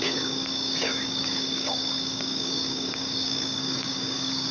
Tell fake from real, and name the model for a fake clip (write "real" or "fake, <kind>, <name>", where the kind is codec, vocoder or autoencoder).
fake, codec, DAC